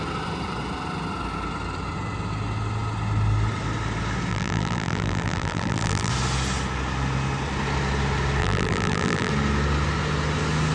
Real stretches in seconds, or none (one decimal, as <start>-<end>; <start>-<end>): 0.0-4.3; 6.1-8.4; 9.3-10.7